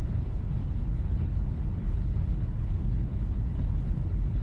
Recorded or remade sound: remade